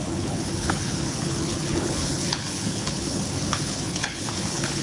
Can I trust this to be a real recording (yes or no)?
no